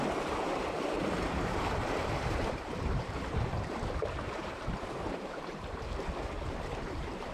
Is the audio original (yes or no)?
no